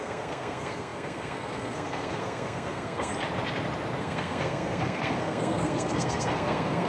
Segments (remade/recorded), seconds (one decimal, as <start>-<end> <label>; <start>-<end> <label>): 0.0-3.1 remade; 3.1-4.0 recorded; 4.0-6.9 remade